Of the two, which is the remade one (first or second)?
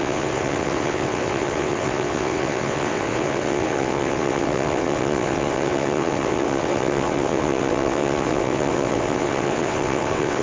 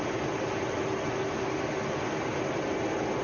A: first